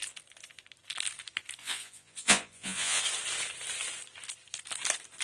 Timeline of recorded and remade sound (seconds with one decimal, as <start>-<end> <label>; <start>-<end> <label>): 0.0-1.6 recorded; 1.6-3.0 remade; 3.0-5.2 recorded